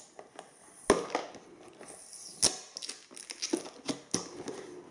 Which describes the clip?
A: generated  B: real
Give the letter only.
B